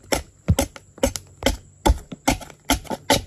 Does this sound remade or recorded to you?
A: recorded